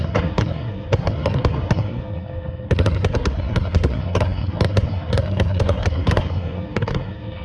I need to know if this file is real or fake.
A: fake